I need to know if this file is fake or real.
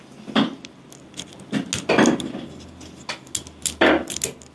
real